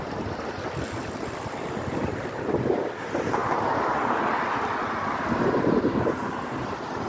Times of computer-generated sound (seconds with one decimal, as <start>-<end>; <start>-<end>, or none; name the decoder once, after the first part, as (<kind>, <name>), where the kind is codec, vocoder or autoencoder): none